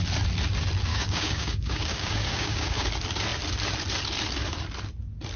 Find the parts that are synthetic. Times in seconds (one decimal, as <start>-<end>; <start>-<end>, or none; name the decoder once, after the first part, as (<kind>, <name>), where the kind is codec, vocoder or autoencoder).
0.9-2.9 (codec, DAC)